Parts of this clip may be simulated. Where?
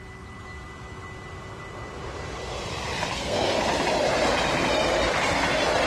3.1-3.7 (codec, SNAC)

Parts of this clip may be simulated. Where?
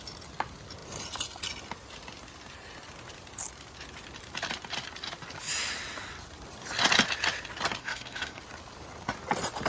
7.8-8.4 (codec, SNAC)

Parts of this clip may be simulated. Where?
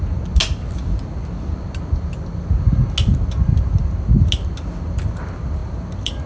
none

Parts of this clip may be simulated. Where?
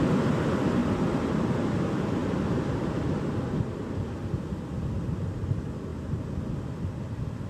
2.2-5.4 (vocoder, BigVGAN v2); 5.9-7.1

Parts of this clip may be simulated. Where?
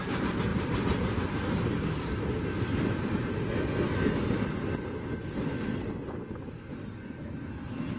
0.5-3.5 (vocoder, BigVGAN v2)